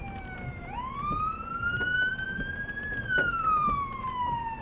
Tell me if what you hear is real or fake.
fake